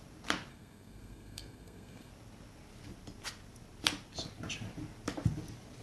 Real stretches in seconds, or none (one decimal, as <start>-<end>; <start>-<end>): 0.0-0.5; 2.1-5.8